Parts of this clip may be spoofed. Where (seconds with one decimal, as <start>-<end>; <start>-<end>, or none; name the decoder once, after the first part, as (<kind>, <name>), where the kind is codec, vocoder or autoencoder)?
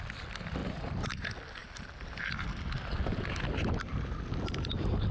0.6-1.2 (vocoder, BigVGAN v2)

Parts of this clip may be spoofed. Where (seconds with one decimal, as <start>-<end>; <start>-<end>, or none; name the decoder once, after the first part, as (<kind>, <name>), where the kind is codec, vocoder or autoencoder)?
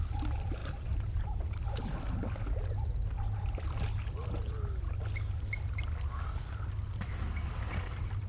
0.6-2.0 (vocoder, BigVGAN v2)